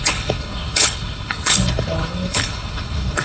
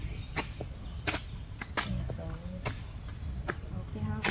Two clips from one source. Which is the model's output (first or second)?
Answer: first